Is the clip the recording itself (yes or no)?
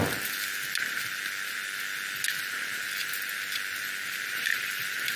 yes